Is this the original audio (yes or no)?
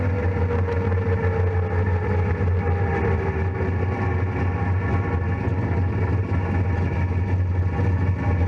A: yes